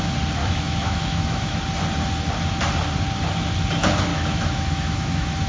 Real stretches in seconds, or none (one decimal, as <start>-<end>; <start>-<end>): 0.0-0.4; 1.6-4.1